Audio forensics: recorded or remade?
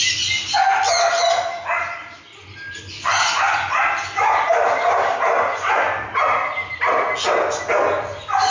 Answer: recorded